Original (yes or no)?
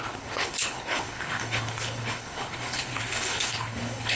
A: no